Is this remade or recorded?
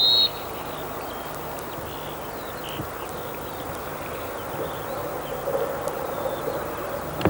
recorded